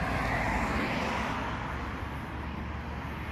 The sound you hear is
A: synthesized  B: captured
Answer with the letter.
B